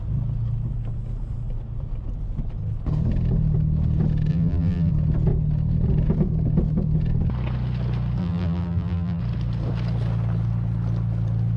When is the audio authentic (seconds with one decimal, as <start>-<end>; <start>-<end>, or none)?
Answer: 0.0-4.3; 4.9-8.2; 9.2-11.6